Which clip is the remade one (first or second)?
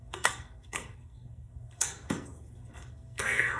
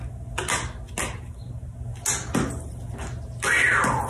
first